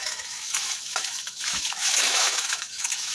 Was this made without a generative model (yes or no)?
no